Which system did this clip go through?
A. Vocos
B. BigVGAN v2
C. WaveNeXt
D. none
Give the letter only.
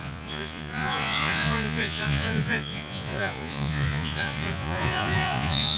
A